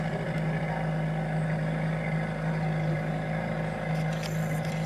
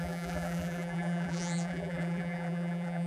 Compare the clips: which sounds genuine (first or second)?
first